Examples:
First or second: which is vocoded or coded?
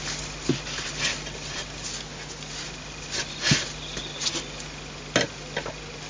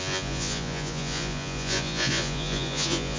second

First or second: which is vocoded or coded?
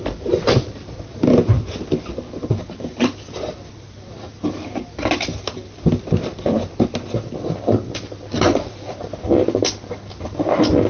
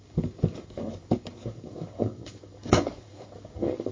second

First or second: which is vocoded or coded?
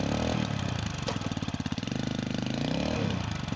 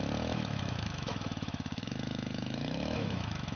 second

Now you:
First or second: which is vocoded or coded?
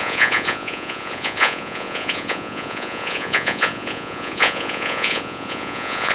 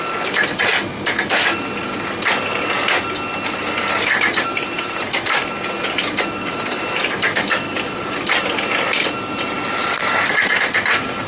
first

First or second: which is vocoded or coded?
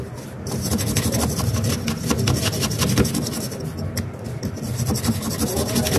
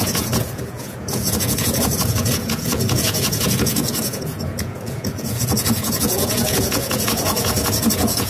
second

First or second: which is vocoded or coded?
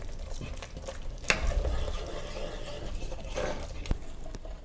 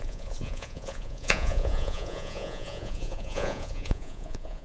second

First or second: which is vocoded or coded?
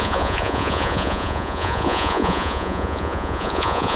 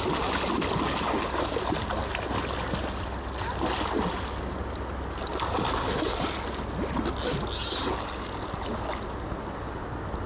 first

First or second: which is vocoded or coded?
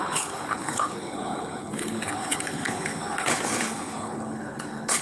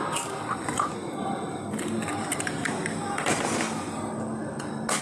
first